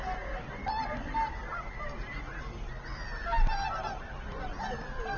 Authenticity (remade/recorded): remade